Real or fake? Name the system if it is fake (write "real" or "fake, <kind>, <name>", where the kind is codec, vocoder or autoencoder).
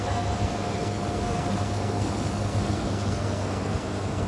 fake, codec, SNAC